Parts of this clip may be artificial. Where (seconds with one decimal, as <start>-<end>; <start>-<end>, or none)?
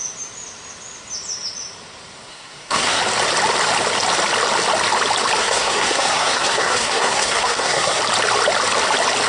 2.3-3.0; 5.4-8.0